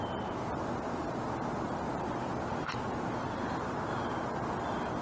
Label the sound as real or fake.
real